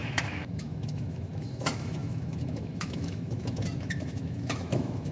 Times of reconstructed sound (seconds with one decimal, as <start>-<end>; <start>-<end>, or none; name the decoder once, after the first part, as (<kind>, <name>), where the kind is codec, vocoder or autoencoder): 0.0-5.1 (autoencoder, DAC-VAE)